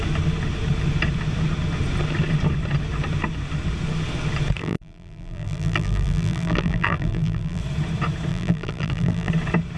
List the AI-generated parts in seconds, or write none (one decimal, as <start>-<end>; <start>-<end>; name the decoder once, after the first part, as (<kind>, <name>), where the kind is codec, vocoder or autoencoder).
4.6-7.6 (vocoder, BigVGAN v2); 8.3-9.3